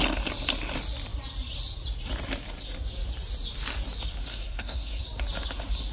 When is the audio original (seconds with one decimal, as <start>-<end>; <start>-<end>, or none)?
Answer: 0.0-4.3; 5.0-5.9